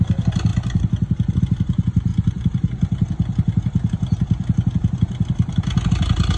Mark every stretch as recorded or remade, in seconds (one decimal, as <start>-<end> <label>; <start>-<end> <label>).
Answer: 0.0-0.5 remade; 0.5-1.4 recorded; 1.4-2.1 remade; 2.1-5.9 recorded; 5.9-6.4 remade